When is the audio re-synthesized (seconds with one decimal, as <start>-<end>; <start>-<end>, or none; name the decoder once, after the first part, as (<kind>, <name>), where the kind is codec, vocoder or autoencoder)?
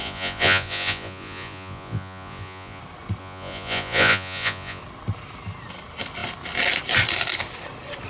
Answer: 0.0-2.8 (vocoder, Vocos); 3.2-4.8